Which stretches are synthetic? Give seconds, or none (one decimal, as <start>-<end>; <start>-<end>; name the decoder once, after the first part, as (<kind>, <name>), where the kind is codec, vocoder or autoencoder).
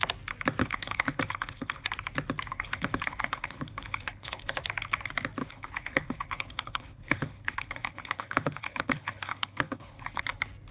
0.6-1.9 (codec, HILCodec); 2.5-4.6; 5.4-10.2